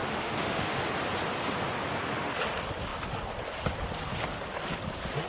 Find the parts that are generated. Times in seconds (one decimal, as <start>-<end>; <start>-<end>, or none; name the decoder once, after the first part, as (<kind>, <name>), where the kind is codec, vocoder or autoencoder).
0.0-0.8 (autoencoder, DAC-VAE)